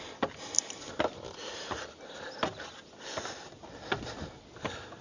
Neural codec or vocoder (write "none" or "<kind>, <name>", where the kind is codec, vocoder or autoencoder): none